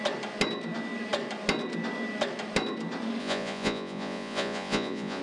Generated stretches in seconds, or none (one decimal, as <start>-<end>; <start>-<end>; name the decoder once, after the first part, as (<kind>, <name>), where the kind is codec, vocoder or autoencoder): 3.2-5.2 (vocoder, Vocos)